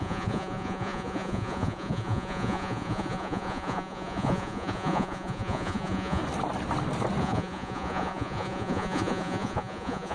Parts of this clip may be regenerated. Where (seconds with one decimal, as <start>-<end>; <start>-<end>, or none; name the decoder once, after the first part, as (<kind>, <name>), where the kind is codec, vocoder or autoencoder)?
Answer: 0.0-6.2 (vocoder, Vocos); 7.2-10.1